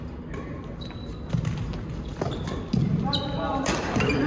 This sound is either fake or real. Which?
real